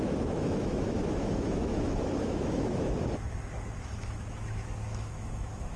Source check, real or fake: fake